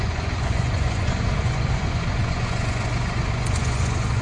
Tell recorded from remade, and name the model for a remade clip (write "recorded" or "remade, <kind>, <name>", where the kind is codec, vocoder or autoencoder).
remade, vocoder, Vocos